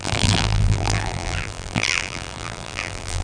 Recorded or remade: remade